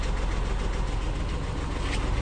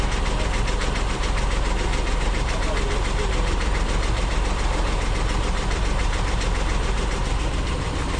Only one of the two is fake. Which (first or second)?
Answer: second